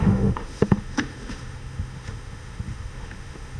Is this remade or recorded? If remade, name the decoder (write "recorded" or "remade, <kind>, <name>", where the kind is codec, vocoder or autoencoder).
remade, autoencoder, DAC-VAE